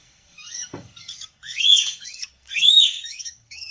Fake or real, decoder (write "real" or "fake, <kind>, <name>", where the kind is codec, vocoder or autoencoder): fake, codec, SNAC